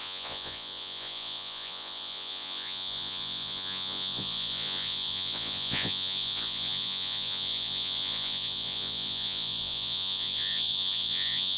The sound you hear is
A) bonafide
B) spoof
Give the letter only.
B